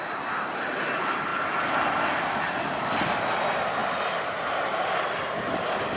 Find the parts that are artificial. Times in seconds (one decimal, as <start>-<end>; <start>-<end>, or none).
1.3-2.6